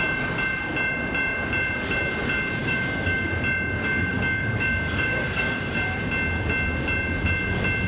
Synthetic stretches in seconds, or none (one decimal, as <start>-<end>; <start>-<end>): 2.6-3.3; 3.8-6.0